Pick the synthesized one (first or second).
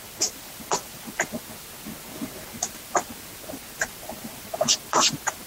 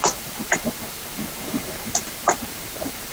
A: second